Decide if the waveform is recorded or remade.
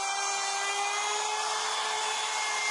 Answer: recorded